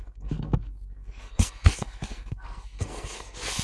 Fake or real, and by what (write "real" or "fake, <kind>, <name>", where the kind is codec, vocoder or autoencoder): fake, codec, SNAC